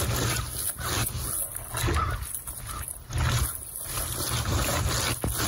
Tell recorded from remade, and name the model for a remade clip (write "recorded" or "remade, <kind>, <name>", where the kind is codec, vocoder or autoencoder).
recorded